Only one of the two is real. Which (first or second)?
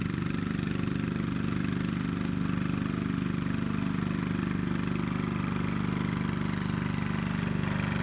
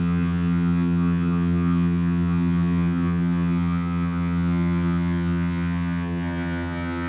first